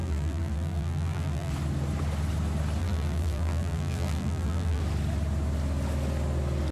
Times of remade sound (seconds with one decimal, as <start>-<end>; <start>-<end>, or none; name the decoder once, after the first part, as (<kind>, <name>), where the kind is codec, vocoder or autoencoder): 0.0-1.5 (vocoder, BigVGAN v2); 2.8-4.8